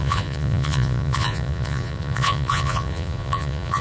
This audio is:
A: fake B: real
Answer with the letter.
A